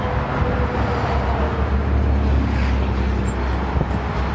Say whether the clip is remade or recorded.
recorded